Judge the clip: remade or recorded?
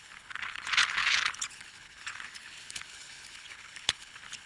remade